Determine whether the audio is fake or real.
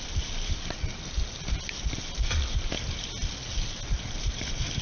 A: real